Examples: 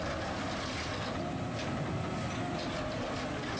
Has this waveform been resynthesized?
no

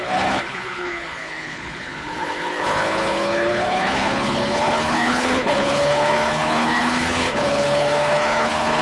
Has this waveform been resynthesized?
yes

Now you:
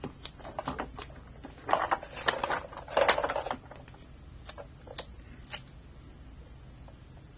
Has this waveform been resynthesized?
no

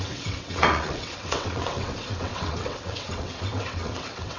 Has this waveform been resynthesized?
yes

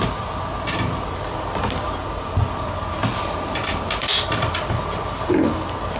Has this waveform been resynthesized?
no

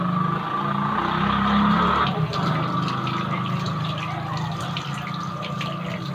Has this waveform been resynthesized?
no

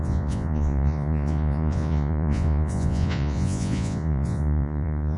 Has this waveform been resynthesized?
yes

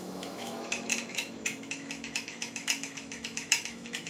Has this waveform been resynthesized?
yes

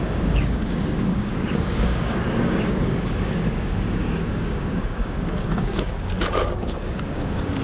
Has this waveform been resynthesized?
yes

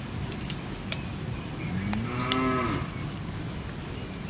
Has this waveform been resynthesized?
no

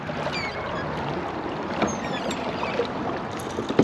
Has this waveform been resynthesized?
no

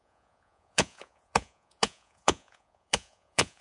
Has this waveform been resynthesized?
yes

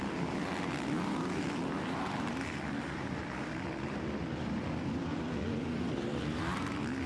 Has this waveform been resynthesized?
yes